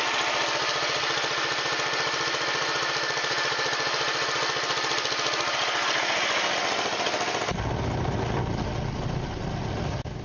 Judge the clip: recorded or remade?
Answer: recorded